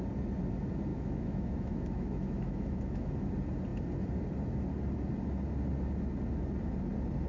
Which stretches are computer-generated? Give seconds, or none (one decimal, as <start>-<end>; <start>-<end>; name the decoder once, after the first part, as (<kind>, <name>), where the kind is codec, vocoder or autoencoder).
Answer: 0.9-3.1 (autoencoder, DAC-VAE)